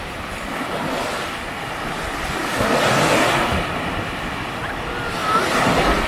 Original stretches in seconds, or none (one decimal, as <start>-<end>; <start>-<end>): 0.0-6.1